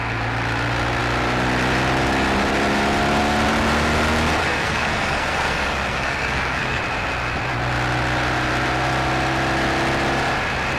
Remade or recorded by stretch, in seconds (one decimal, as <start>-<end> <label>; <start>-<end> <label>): 0.0-4.4 recorded; 4.4-6.8 remade; 6.8-10.8 recorded